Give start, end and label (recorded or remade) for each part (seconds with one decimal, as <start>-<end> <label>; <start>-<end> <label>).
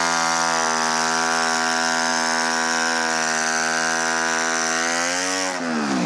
0.0-6.1 recorded